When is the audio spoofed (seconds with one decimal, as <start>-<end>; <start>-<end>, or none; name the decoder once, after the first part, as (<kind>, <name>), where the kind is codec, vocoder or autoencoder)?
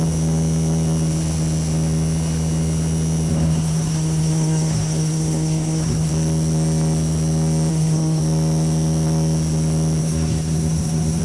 3.3-6.1 (codec, SNAC); 7.7-8.2; 10.0-11.2